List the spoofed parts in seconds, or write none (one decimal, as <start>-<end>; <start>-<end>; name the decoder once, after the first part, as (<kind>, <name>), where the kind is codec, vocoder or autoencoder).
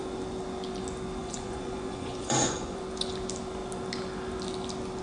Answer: 1.2-2.8 (vocoder, Vocos)